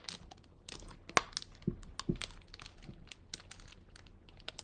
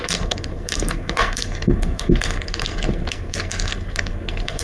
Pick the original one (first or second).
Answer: first